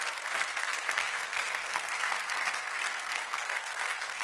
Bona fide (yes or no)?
no